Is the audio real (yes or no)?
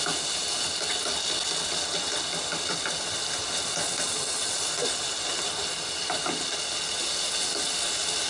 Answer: yes